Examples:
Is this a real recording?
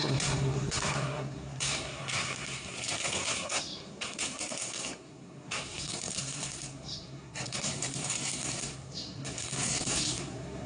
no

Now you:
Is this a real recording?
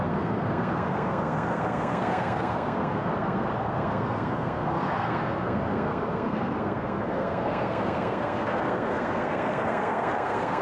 no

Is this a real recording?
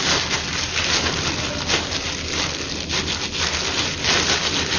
yes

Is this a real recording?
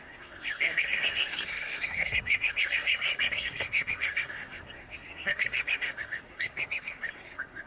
no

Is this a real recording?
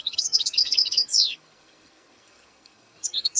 no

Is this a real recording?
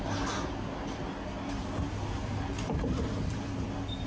yes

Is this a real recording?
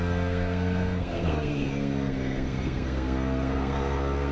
no